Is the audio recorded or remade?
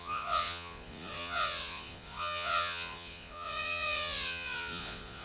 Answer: remade